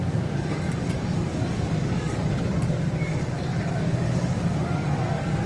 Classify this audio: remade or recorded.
remade